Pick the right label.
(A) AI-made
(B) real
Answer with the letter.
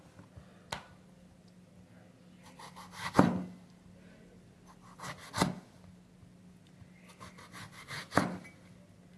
B